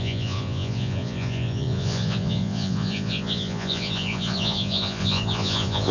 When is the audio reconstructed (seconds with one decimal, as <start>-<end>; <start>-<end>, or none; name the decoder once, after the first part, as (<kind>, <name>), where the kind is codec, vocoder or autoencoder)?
0.0-5.9 (vocoder, Vocos)